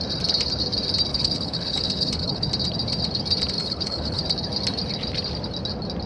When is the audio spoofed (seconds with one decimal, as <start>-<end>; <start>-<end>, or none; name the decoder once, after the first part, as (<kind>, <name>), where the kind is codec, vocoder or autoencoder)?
1.1-2.5 (codec, HILCodec); 3.6-4.2